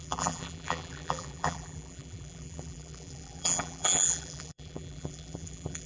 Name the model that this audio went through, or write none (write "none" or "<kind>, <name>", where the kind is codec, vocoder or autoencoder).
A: vocoder, BigVGAN v2